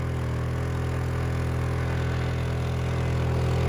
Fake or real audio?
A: real